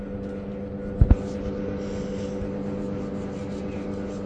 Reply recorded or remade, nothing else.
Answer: recorded